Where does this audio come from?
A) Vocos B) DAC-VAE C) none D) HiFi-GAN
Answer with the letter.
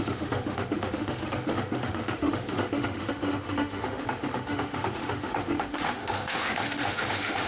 B